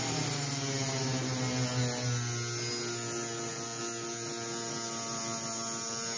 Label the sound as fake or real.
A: real